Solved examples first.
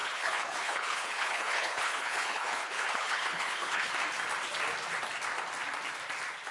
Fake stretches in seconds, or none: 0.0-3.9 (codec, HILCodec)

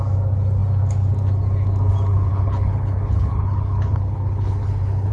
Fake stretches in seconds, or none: 2.3-5.1 (codec, HILCodec)

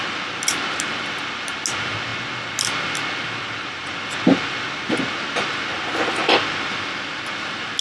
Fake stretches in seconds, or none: none

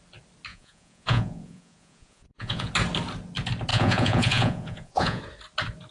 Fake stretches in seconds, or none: 0.5-2.7 (vocoder, Vocos); 3.7-5.2

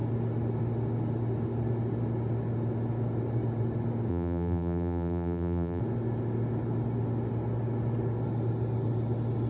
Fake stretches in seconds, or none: 4.1-5.8 (vocoder, BigVGAN v2)

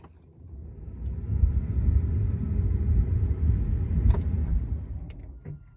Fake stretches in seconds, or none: none

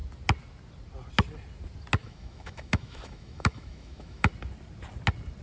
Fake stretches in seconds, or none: 2.0-4.3 (autoencoder, DAC-VAE)